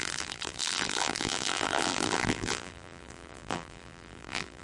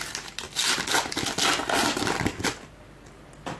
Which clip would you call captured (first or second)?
second